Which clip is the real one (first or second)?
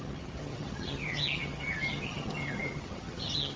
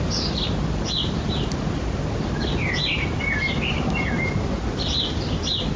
second